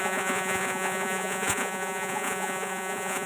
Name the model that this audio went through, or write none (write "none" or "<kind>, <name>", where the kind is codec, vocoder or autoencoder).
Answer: vocoder, Vocos